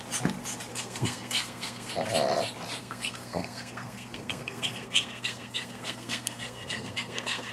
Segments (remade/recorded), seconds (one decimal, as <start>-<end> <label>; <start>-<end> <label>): 0.0-0.7 recorded; 0.7-1.9 remade; 1.9-2.8 recorded; 2.8-7.5 remade